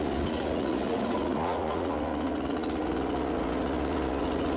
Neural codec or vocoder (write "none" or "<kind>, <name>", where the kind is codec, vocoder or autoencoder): vocoder, Vocos